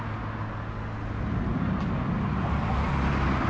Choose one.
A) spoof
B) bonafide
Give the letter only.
B